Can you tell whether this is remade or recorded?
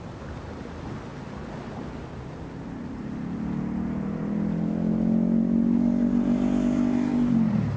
recorded